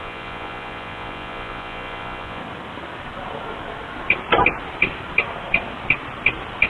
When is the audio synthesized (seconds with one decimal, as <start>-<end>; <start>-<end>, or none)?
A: 0.0-2.4